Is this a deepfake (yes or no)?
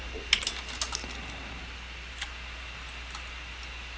no